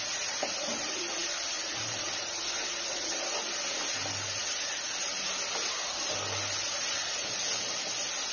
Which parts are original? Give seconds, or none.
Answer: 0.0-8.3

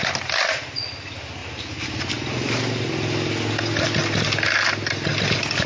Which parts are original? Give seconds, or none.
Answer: 0.0-5.7

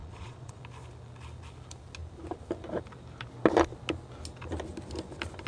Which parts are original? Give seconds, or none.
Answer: 0.6-5.5